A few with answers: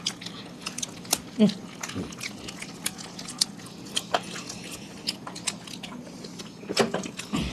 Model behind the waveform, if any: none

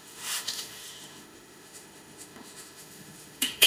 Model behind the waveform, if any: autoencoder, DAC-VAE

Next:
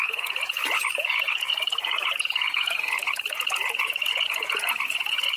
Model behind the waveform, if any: vocoder, Vocos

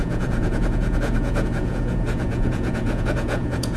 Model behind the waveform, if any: vocoder, Vocos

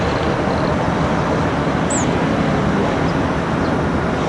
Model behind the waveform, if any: none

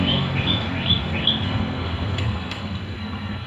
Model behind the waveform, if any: codec, SNAC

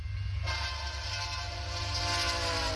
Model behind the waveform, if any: none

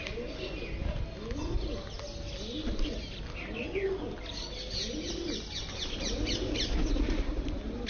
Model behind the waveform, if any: none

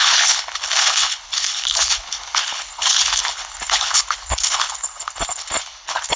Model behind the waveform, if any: codec, HILCodec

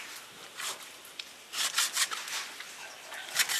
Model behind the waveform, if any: none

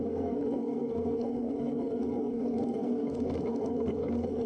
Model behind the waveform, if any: codec, SNAC